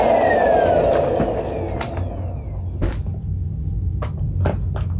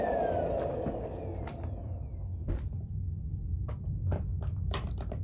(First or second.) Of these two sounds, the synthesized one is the second